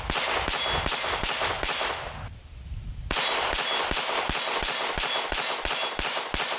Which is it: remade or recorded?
recorded